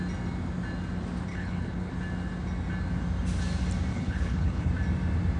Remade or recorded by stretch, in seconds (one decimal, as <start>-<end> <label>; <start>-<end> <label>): 0.0-1.3 recorded; 1.3-1.9 remade; 1.9-3.9 recorded; 3.9-4.7 remade; 4.7-5.4 recorded

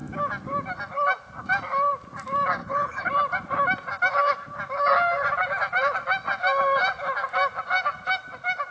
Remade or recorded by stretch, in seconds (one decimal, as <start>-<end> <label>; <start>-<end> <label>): 0.0-2.6 recorded; 2.6-3.1 remade; 3.1-8.7 recorded